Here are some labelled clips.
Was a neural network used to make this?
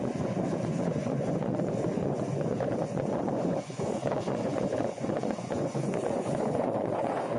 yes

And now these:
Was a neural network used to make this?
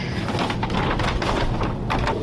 no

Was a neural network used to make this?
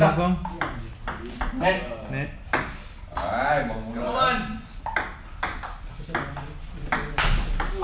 no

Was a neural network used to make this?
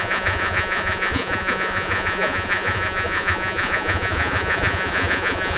yes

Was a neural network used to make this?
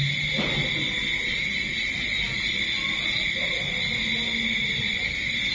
no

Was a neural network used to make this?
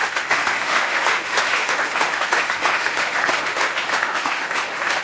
yes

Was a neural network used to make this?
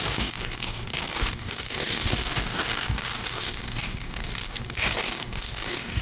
yes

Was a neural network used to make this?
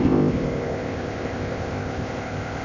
yes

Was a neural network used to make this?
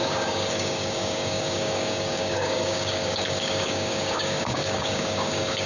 yes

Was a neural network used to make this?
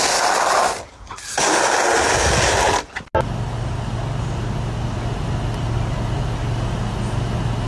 no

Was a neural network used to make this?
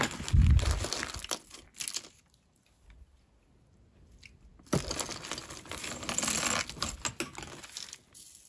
no